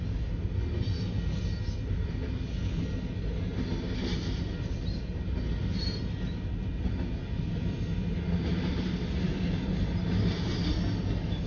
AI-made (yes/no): no